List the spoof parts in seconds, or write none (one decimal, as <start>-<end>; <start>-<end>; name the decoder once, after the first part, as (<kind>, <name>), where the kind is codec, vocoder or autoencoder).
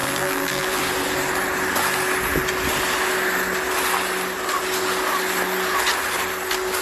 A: 0.0-0.8 (vocoder, BigVGAN v2)